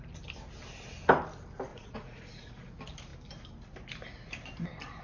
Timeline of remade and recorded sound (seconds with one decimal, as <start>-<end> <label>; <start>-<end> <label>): 0.0-1.7 recorded; 1.7-2.7 remade; 2.7-5.0 recorded

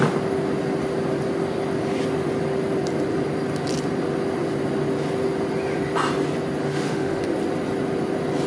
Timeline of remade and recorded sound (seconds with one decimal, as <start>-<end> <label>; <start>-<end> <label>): 0.0-6.6 recorded; 6.6-7.2 remade; 7.2-8.5 recorded

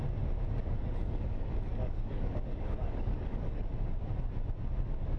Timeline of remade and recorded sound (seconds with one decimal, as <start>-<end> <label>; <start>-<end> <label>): 0.0-0.6 recorded; 0.6-3.7 remade; 3.7-5.2 recorded

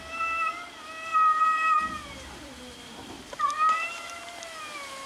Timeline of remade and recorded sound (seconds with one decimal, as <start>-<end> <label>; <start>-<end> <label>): 0.0-1.1 recorded; 1.1-4.2 remade; 4.2-5.1 recorded

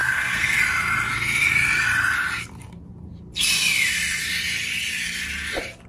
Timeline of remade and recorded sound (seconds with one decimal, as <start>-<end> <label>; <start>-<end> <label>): 0.0-0.6 remade; 0.6-5.9 recorded

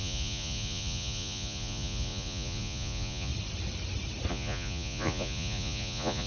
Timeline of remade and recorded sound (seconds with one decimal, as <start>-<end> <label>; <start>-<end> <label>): 0.0-3.3 remade; 3.3-4.3 recorded; 4.3-6.3 remade

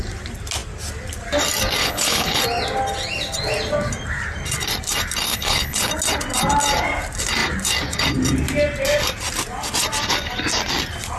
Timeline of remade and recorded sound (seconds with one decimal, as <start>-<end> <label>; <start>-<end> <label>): 0.0-1.8 recorded; 1.8-2.4 remade; 2.4-5.3 recorded; 5.3-5.9 remade; 5.9-11.2 recorded